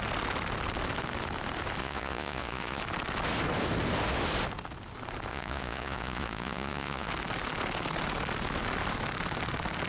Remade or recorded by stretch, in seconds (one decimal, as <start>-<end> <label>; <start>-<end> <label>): 0.0-1.8 recorded; 1.8-2.8 remade; 2.8-5.3 recorded; 5.3-7.1 remade; 7.1-9.9 recorded